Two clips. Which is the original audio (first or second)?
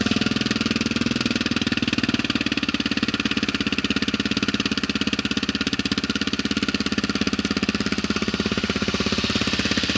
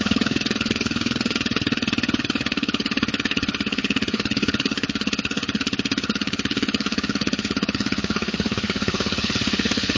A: first